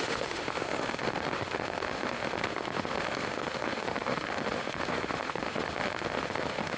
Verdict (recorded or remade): remade